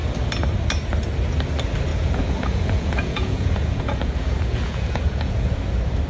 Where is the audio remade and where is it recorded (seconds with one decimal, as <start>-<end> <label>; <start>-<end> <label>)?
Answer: 0.0-1.9 recorded; 1.9-5.6 remade; 5.6-6.1 recorded